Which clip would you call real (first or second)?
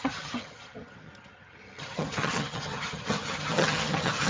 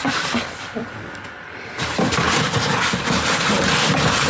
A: second